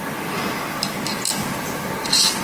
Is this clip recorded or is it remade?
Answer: recorded